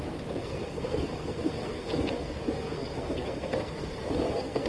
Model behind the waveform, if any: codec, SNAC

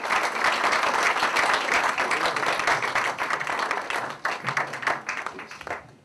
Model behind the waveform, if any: none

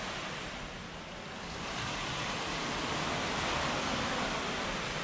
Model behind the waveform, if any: none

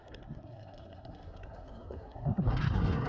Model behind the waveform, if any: codec, SNAC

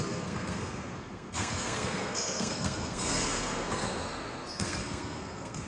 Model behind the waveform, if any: codec, SNAC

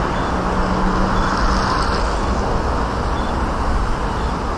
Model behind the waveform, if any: none